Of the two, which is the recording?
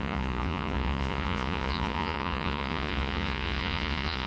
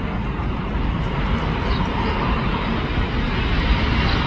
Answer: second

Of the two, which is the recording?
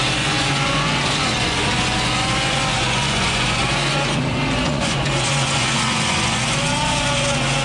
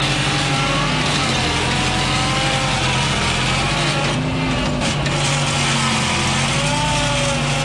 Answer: second